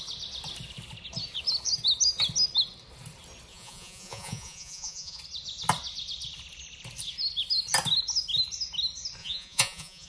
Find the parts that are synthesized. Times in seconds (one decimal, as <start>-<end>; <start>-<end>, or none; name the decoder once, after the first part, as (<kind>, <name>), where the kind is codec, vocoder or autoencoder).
3.5-5.2 (vocoder, Vocos); 9.2-10.1